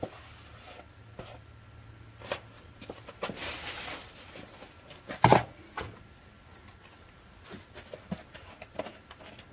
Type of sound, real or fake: real